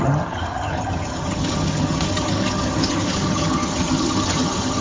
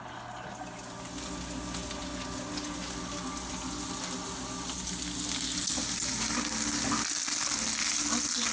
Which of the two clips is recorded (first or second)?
second